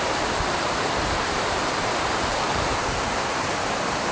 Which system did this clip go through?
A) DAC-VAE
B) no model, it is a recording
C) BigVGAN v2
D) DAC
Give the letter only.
C